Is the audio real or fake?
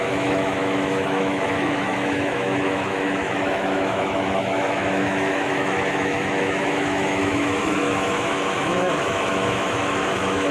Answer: fake